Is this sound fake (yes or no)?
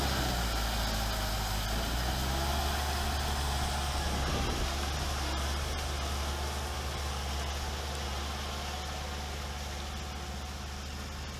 no